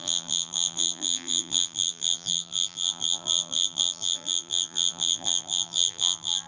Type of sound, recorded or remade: remade